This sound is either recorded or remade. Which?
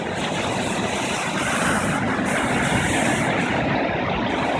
recorded